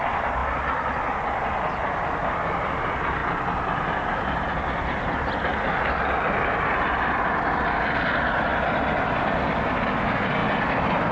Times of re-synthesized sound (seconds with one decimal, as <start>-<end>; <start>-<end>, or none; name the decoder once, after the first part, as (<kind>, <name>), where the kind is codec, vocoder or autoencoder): none